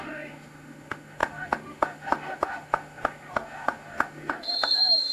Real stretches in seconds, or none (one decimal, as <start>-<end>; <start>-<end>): none